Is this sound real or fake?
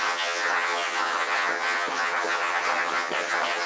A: fake